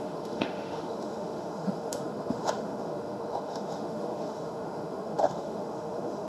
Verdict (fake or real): fake